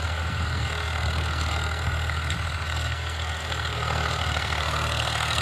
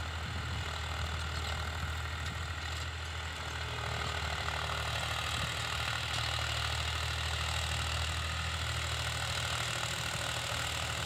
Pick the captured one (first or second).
second